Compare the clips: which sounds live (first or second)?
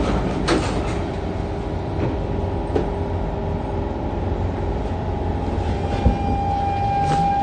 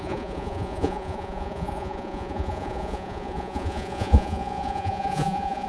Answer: first